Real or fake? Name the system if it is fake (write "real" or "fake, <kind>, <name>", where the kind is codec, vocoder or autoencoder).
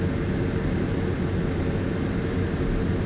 real